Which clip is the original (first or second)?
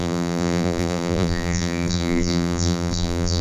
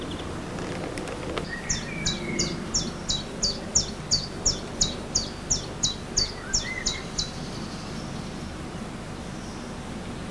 second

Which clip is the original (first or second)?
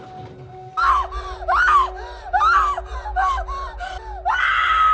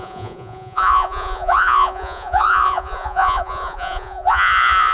first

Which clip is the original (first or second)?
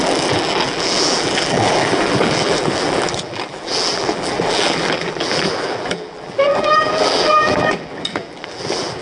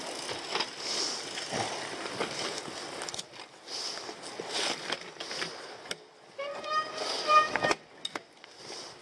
second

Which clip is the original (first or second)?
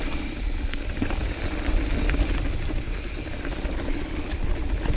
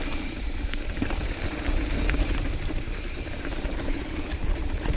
first